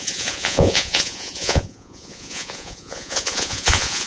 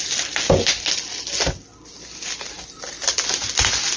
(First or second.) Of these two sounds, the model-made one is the first